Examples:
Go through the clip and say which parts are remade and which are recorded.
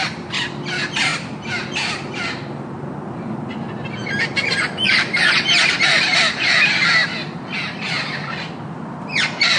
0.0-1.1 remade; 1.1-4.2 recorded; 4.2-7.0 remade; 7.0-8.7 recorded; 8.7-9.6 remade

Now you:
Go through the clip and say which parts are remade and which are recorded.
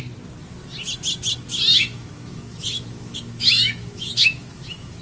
0.0-1.7 recorded; 1.7-5.0 remade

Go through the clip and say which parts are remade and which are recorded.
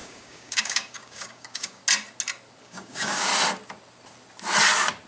0.0-1.8 remade; 1.8-2.6 recorded; 2.6-3.3 remade; 3.3-5.1 recorded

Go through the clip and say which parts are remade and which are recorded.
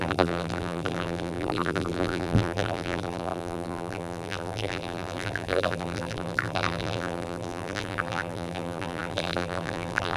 0.0-10.2 remade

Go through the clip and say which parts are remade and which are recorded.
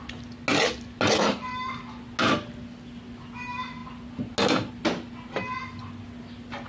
0.0-6.7 recorded